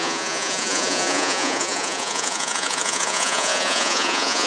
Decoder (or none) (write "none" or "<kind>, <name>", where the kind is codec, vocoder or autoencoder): vocoder, Vocos